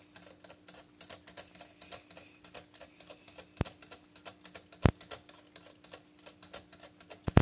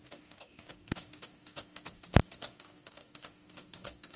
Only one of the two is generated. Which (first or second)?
second